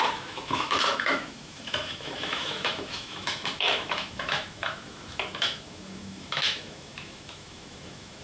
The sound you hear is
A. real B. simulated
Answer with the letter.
B